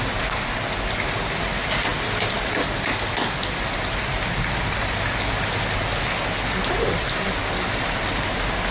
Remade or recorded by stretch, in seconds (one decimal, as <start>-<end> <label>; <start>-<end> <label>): 0.0-8.7 recorded